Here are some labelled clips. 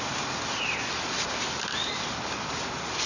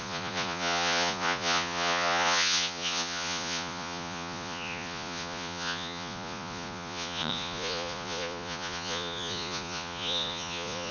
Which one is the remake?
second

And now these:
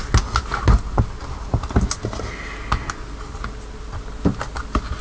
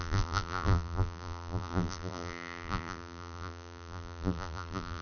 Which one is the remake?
second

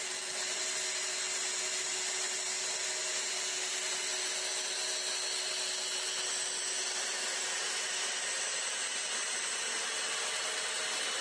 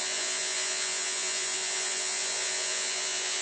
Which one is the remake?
second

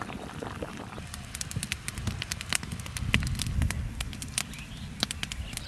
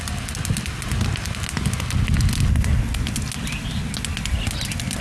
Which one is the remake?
first